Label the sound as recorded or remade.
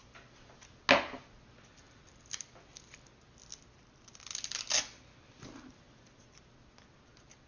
recorded